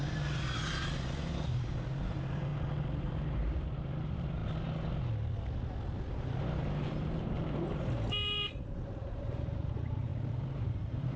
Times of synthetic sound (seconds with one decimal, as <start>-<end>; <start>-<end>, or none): 0.0-2.5; 3.0-4.4; 6.1-10.1; 10.6-11.2